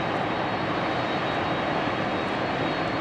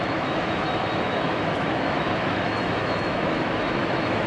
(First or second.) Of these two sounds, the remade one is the second